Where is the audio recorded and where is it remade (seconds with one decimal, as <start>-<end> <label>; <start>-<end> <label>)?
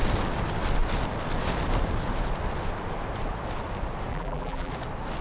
0.0-4.1 recorded; 4.1-4.7 remade; 4.7-5.2 recorded